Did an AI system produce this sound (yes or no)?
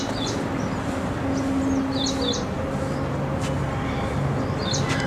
no